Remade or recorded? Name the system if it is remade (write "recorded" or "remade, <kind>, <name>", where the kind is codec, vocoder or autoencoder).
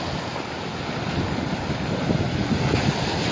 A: recorded